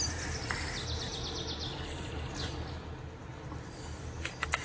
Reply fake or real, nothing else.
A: real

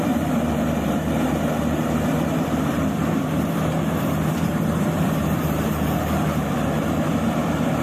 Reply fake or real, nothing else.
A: fake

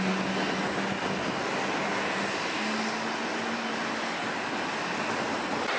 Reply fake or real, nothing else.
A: real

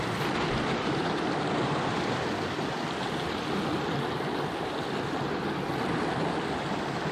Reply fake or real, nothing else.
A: real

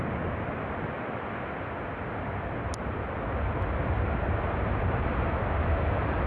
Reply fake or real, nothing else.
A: real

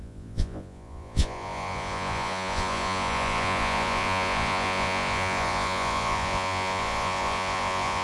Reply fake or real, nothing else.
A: fake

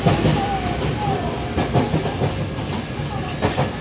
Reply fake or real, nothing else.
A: real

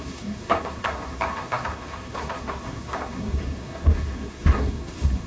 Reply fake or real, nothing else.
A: fake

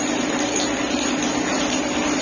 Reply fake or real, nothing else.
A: real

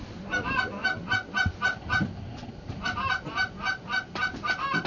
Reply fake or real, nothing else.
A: real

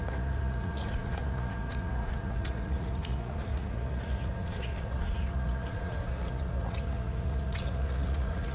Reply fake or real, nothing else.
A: fake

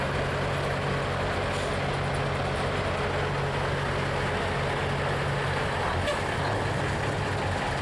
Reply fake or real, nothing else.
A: real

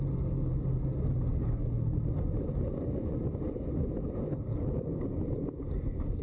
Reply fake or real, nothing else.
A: real